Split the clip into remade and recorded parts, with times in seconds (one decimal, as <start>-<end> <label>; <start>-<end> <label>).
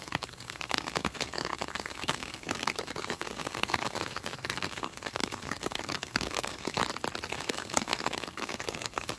0.0-6.8 remade; 6.8-7.3 recorded; 7.3-9.2 remade